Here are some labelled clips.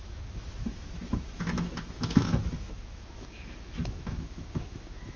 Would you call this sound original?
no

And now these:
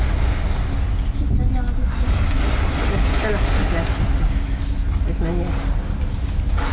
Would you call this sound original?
yes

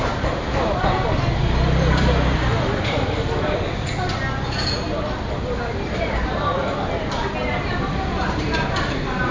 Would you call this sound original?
yes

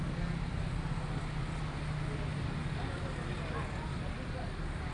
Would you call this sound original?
yes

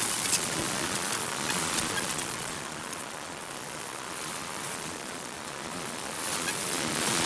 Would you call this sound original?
no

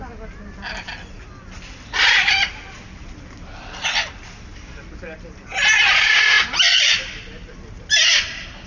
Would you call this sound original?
yes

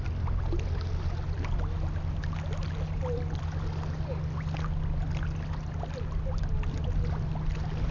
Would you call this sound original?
yes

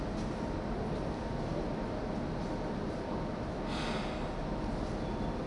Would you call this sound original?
yes